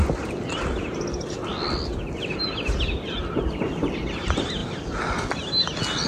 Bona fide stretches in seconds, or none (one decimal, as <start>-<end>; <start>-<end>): 0.0-6.1